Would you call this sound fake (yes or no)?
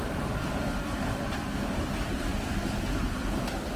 no